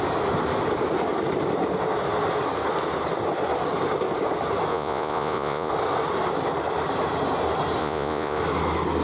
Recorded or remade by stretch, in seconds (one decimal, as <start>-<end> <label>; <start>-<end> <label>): 0.0-4.7 recorded; 4.7-5.7 remade; 5.7-7.8 recorded; 7.8-8.4 remade; 8.4-9.0 recorded